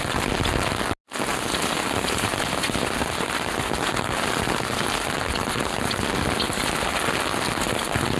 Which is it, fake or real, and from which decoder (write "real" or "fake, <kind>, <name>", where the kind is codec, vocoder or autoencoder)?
real